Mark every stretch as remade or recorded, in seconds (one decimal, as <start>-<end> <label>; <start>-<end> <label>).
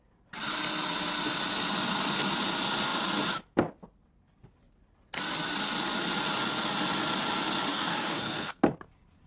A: 0.0-7.7 recorded; 7.7-8.6 remade; 8.6-9.3 recorded